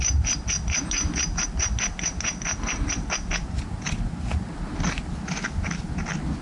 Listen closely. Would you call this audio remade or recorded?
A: recorded